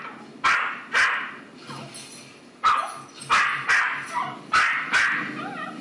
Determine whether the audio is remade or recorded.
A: recorded